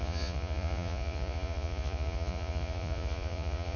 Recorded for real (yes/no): no